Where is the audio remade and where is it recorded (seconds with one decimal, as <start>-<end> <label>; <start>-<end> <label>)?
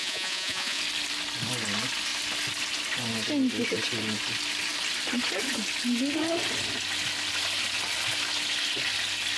0.0-0.8 remade; 0.8-9.4 recorded